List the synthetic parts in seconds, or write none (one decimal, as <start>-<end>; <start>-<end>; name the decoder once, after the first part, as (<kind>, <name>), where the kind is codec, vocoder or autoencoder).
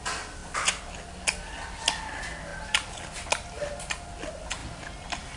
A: none